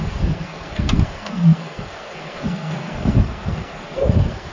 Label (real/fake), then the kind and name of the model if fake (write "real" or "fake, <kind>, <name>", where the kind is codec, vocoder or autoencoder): fake, codec, SNAC